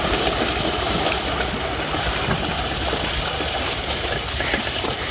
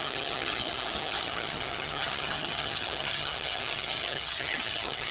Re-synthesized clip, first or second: second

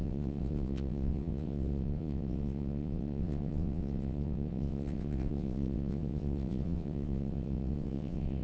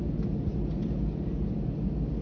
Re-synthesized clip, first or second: first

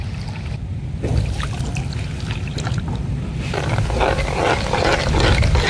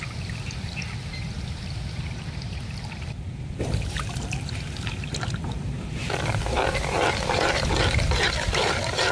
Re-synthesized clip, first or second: second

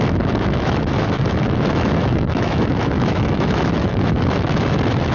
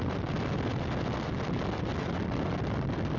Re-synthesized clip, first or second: first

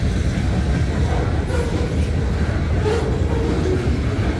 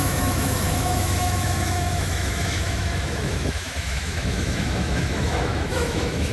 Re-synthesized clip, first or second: second